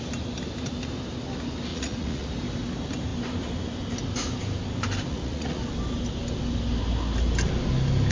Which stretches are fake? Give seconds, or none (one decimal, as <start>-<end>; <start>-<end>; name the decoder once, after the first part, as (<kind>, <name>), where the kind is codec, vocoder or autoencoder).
1.7-2.3 (vocoder, Vocos); 5.1-5.6